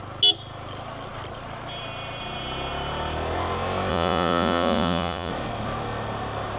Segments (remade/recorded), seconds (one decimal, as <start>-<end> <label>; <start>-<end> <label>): 0.0-3.9 recorded; 3.9-5.3 remade; 5.3-6.6 recorded